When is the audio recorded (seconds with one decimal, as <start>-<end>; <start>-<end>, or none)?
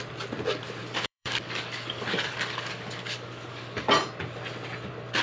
0.0-0.8; 3.9-5.2